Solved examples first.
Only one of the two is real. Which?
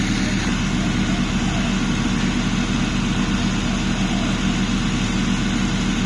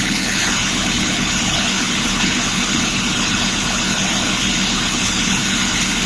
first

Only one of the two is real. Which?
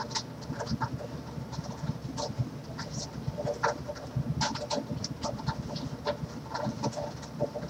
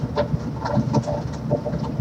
second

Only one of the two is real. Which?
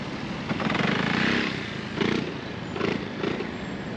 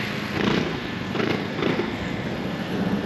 first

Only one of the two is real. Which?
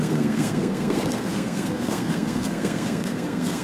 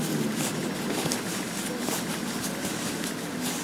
second